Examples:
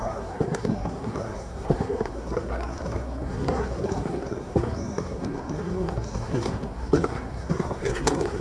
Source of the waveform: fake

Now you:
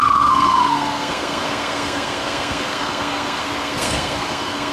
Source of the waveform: fake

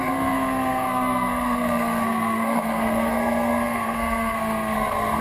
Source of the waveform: fake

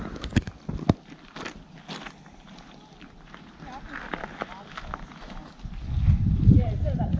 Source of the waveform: real